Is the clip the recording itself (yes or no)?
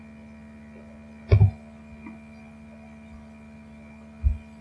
yes